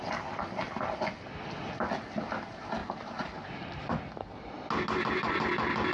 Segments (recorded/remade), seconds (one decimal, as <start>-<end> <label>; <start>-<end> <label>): 0.0-2.8 recorded; 2.8-3.8 remade; 3.8-5.9 recorded

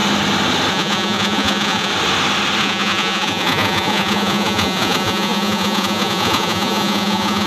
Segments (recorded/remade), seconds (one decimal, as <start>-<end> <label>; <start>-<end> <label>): 0.0-0.7 recorded; 0.7-1.9 remade; 1.9-2.6 recorded; 2.6-7.5 remade

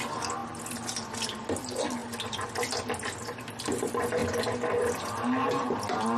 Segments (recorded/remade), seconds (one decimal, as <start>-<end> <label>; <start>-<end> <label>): 0.0-0.4 remade; 0.4-1.6 recorded; 1.6-2.0 remade; 2.0-3.5 recorded; 3.5-6.2 remade

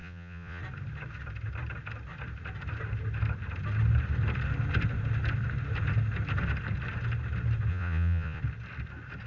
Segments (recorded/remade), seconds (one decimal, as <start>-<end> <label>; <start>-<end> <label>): 0.0-0.6 remade; 0.6-7.7 recorded; 7.7-8.4 remade; 8.4-9.3 recorded

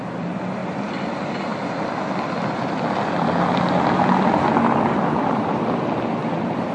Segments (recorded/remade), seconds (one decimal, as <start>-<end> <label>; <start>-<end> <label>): 0.0-0.6 recorded; 0.6-1.1 remade; 1.1-6.7 recorded